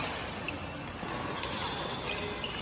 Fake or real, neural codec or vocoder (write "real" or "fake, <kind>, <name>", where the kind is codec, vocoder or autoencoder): real